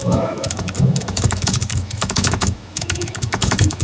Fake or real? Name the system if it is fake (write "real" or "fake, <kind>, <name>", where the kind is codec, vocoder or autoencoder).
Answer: fake, autoencoder, DAC-VAE